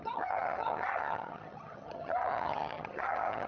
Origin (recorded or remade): remade